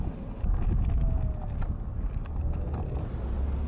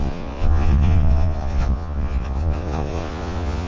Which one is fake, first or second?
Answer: second